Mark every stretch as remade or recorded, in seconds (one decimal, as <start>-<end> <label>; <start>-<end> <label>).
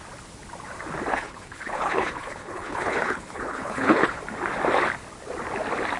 0.0-1.1 recorded; 1.1-4.2 remade; 4.2-6.0 recorded